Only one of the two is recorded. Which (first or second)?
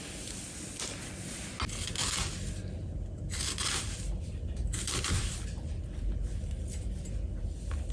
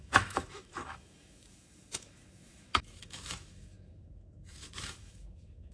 first